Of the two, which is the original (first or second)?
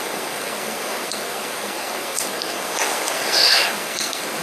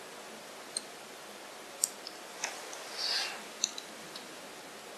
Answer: second